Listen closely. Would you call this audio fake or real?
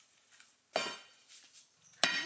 real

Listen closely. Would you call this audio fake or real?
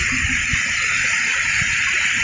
real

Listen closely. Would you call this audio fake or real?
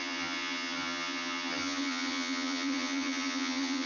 fake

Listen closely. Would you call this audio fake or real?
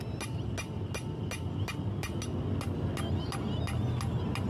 real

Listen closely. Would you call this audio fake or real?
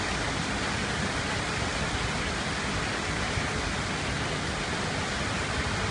real